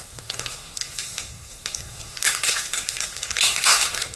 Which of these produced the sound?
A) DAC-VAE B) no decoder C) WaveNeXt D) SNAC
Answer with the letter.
D